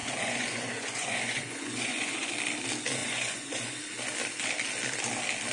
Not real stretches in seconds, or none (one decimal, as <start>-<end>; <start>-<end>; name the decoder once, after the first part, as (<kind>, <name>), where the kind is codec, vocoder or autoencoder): 0.0-2.3 (vocoder, Vocos); 3.0-3.8